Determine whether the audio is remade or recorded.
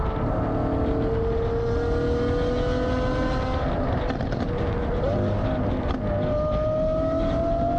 recorded